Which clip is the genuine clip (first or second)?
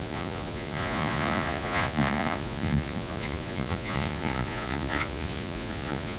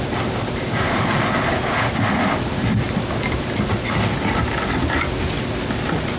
second